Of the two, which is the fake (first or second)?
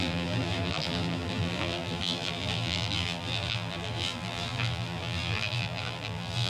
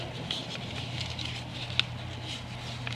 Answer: first